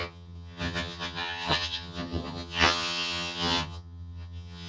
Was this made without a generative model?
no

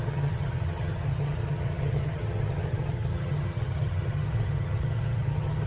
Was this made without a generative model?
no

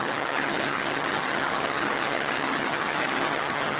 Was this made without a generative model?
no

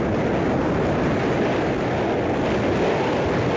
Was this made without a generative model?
yes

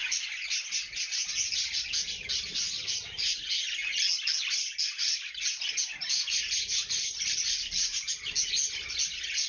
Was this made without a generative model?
yes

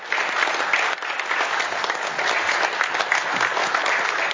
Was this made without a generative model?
yes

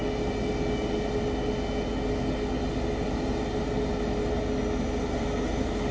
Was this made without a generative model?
yes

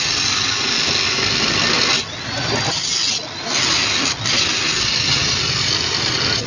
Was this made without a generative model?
yes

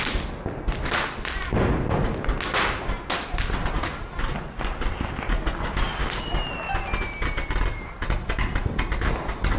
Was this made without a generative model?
yes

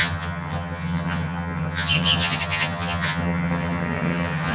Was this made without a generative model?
no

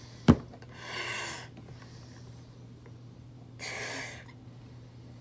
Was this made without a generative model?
yes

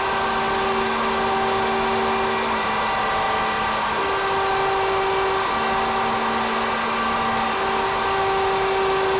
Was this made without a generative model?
yes